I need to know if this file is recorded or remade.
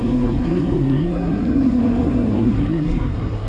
remade